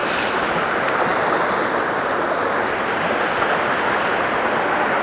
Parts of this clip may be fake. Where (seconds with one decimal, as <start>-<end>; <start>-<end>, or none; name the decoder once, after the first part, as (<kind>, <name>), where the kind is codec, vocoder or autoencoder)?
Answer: none